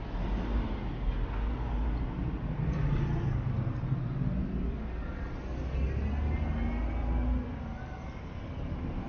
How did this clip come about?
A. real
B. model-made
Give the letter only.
A